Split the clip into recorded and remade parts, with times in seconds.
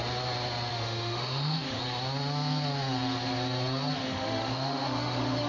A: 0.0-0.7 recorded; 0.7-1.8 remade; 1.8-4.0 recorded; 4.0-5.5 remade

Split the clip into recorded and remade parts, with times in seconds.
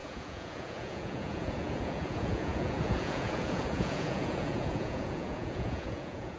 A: 0.0-6.4 remade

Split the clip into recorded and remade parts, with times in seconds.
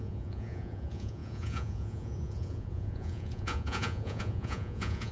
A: 0.0-5.1 remade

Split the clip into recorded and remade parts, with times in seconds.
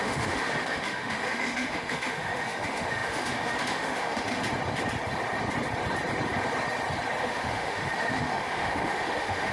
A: 0.0-4.4 remade; 4.4-7.2 recorded; 7.2-9.5 remade